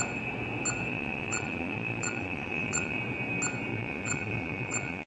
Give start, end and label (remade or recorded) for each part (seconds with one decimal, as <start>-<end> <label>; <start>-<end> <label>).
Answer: 0.0-0.9 recorded; 0.9-3.0 remade; 3.0-3.7 recorded; 3.7-5.1 remade